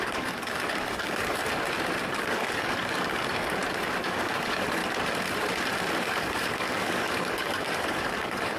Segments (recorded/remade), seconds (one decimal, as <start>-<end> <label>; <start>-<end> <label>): 0.0-1.4 remade; 1.4-2.1 recorded; 2.1-3.6 remade; 3.6-4.1 recorded; 4.1-4.8 remade; 4.8-6.0 recorded; 6.0-8.6 remade